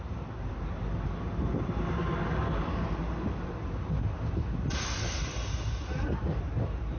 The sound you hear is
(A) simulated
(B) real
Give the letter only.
B